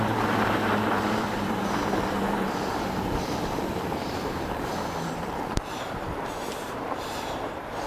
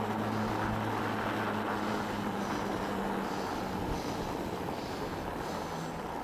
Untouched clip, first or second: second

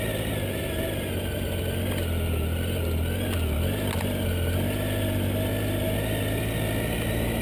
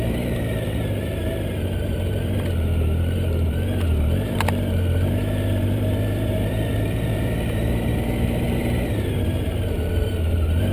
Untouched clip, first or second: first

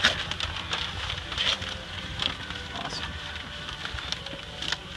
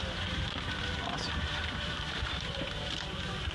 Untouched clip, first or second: first